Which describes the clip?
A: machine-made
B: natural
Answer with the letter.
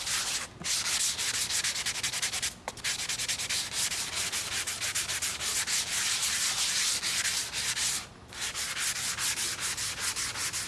B